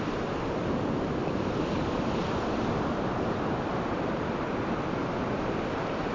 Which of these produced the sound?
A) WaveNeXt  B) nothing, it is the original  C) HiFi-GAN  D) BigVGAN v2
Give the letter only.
B